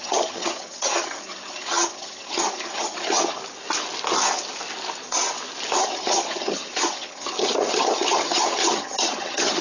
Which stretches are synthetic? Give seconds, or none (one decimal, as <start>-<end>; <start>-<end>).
0.0-3.4; 5.8-9.6